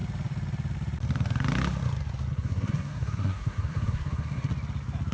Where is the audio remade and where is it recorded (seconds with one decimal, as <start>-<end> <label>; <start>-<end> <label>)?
0.0-2.3 recorded; 2.3-4.5 remade; 4.5-5.1 recorded